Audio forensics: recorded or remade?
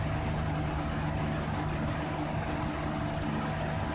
recorded